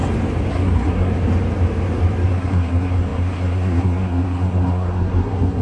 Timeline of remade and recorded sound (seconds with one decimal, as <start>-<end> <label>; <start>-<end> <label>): 0.0-0.5 recorded; 0.5-1.1 remade; 1.1-2.3 recorded; 2.3-5.6 remade